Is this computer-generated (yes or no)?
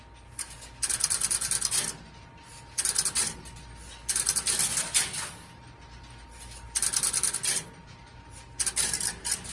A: no